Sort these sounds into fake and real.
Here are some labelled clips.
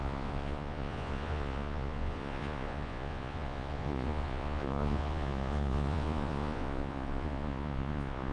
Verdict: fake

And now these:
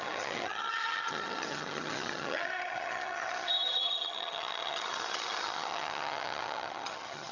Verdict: fake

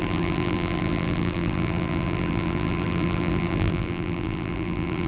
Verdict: fake